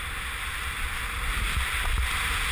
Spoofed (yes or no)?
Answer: no